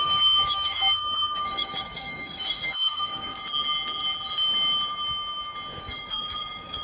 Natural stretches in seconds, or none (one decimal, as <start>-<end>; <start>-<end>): 3.3-5.8